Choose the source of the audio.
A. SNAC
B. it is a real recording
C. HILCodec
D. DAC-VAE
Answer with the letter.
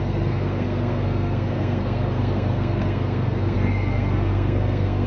A